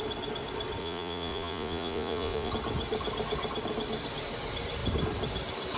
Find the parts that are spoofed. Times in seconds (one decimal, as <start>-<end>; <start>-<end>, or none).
0.8-2.5